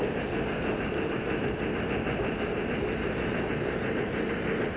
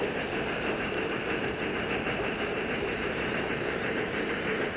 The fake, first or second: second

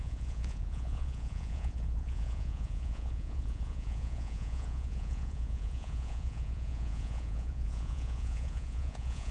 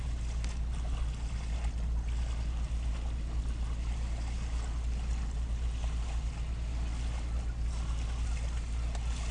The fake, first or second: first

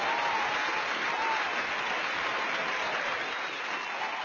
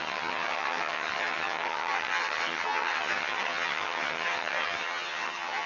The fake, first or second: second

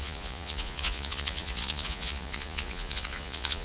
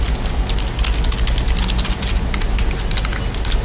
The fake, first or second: first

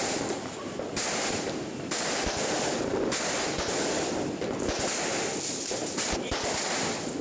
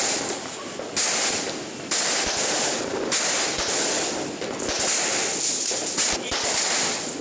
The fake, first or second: first